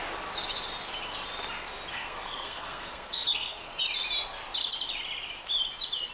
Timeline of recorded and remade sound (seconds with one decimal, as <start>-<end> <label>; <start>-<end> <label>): 0.0-1.9 recorded; 1.9-3.8 remade; 3.8-6.1 recorded